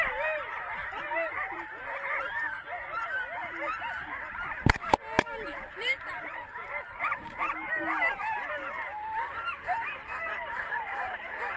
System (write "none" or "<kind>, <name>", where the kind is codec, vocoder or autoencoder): vocoder, BigVGAN v2